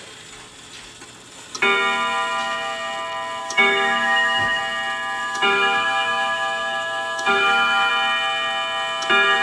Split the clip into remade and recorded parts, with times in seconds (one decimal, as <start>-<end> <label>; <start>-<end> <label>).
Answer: 0.0-3.4 recorded; 3.4-4.6 remade; 4.6-5.2 recorded; 5.2-7.9 remade; 7.9-9.4 recorded